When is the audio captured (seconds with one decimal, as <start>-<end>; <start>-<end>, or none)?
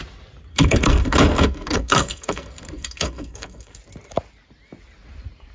0.0-0.5; 3.8-5.5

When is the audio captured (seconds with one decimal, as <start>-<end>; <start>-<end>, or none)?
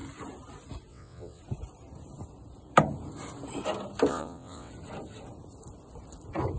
0.0-0.9; 1.4-4.1; 4.7-6.6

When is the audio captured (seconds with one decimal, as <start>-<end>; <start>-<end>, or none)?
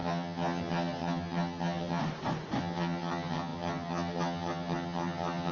2.0-2.6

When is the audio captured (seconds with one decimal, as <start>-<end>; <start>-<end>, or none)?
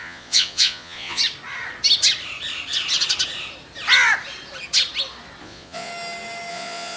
1.2-5.4; 5.9-6.5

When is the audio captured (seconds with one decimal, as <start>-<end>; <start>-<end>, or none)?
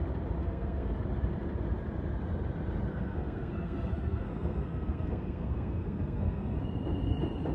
0.0-0.4; 0.9-2.9; 6.6-7.5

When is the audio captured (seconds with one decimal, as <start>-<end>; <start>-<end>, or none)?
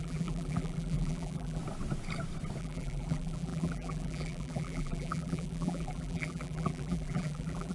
1.6-2.6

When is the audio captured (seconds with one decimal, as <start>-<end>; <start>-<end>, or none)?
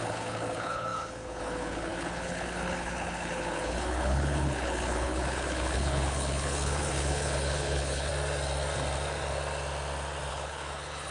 8.1-10.3